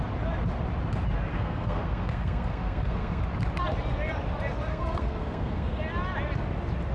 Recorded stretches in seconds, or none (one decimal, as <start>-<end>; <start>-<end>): 0.0-1.3; 3.2-4.7; 5.8-6.9